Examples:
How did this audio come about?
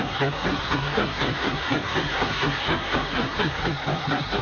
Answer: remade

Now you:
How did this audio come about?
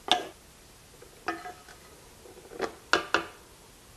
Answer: recorded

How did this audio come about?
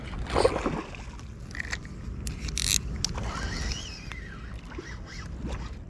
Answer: recorded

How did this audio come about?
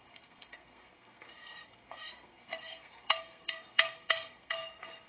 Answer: remade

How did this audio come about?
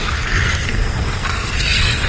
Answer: remade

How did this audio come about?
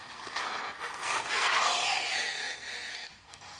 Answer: remade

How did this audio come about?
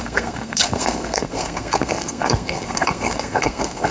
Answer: remade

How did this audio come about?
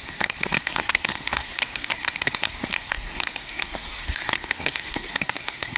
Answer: remade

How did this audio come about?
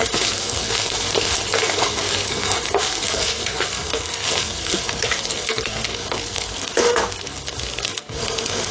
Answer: remade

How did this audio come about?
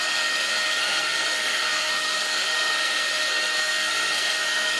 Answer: remade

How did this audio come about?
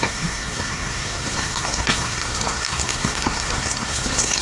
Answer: remade